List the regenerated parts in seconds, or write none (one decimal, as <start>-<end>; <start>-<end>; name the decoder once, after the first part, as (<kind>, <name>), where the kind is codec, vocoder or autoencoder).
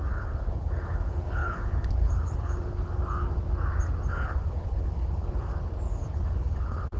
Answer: 0.0-3.0 (codec, HILCodec); 4.1-5.5; 6.1-7.0